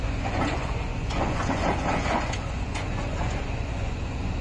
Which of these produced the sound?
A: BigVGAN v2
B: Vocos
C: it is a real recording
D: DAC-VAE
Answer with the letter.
B